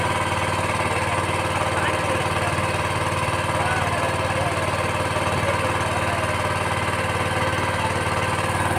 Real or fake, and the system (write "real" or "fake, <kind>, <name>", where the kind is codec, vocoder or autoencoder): real